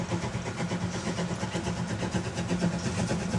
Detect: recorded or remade recorded